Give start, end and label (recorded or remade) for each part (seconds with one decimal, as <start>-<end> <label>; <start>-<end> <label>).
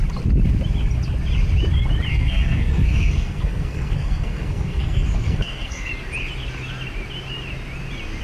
0.0-2.1 recorded; 2.1-5.9 remade; 5.9-8.2 recorded